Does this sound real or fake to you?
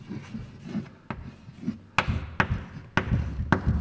real